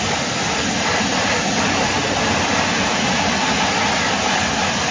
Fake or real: real